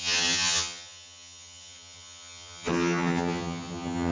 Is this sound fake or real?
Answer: fake